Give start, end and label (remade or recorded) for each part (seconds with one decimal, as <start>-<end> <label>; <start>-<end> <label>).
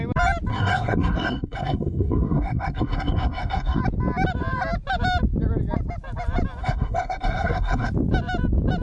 0.0-0.5 recorded; 0.5-3.8 remade; 3.8-6.6 recorded; 6.6-7.9 remade; 7.9-8.8 recorded